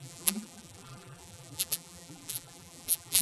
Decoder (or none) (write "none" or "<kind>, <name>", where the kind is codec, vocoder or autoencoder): vocoder, BigVGAN v2